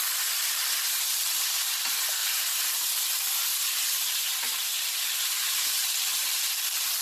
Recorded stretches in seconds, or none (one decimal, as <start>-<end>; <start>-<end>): 0.0-1.1; 1.7-2.2; 6.4-7.0